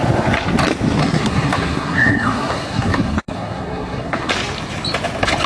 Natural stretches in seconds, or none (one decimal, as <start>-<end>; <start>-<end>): 0.0-1.0; 4.3-5.5

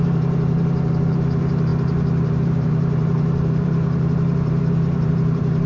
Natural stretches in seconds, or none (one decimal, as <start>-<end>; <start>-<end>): none

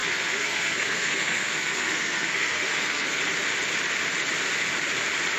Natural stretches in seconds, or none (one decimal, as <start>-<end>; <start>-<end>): 3.2-5.4

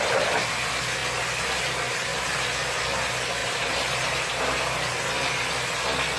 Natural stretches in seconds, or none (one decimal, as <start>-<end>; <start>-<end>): 0.0-3.4; 4.4-6.2

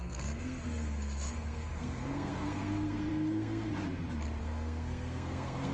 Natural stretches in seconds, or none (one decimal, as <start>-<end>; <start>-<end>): 3.7-4.4